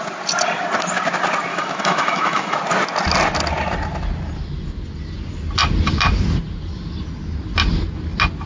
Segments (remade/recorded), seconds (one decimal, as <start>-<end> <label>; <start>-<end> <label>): 0.0-1.5 recorded; 1.5-2.6 remade; 2.6-8.5 recorded